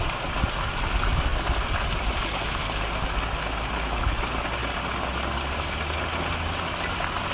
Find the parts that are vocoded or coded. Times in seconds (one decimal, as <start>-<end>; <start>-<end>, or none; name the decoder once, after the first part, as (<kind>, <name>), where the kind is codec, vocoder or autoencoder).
none